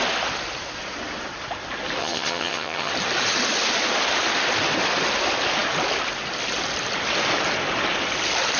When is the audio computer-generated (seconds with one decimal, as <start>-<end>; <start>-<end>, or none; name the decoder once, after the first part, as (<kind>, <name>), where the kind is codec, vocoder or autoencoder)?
2.0-2.9 (vocoder, HiFi-GAN)